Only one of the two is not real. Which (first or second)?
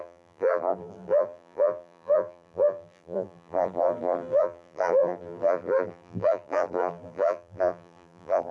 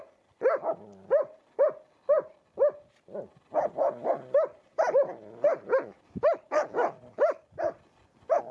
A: first